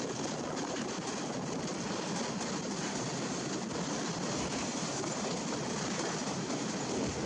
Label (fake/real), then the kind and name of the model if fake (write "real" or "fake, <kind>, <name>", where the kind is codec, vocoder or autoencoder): real